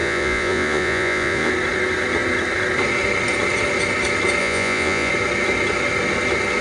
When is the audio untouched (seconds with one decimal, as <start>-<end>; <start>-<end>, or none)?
1.5-4.4; 5.1-6.6